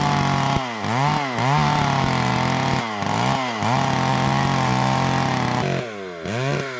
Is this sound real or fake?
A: real